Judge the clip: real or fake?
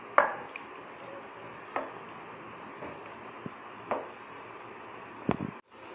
real